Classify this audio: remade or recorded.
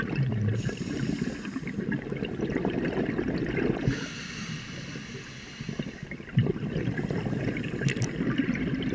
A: recorded